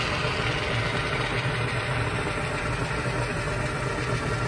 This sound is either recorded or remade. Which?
recorded